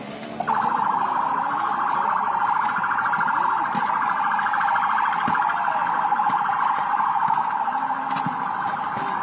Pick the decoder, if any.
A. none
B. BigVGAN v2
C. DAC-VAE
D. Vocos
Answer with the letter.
B